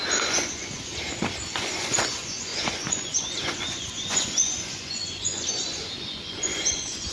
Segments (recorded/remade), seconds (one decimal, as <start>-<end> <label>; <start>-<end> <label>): 0.0-0.9 remade; 0.9-1.5 recorded; 1.5-7.1 remade